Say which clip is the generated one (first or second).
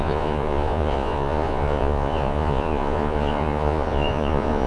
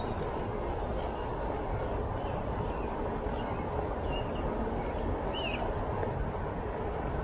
first